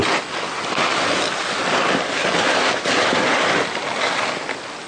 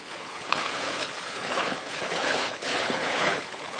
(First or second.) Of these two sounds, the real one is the first